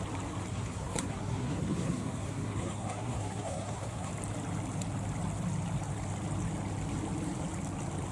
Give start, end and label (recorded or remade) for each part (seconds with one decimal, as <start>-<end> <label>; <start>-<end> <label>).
0.0-0.5 recorded; 0.5-4.1 remade; 4.1-8.1 recorded